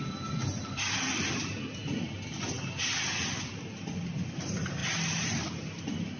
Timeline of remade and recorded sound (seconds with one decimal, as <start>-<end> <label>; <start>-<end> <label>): 0.0-4.8 recorded; 4.8-5.8 remade; 5.8-6.2 recorded